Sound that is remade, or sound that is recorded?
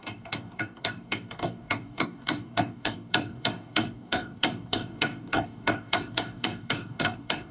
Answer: remade